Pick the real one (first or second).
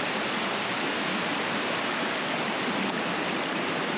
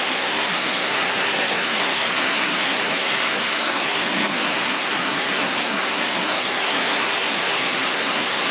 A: first